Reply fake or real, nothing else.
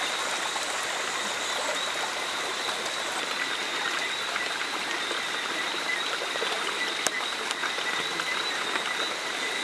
real